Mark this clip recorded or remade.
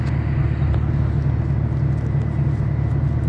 recorded